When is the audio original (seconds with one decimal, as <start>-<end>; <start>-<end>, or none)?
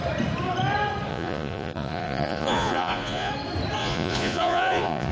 0.0-1.1; 3.3-3.8